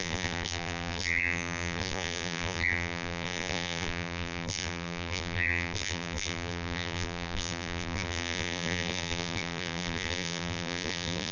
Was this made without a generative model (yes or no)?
no